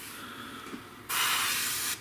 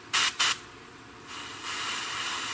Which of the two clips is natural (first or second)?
first